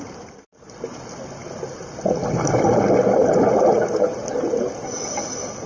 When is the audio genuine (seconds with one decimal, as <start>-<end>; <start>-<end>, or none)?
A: 0.0-5.7